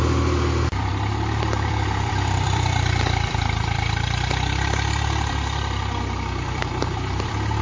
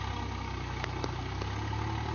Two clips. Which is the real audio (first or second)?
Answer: second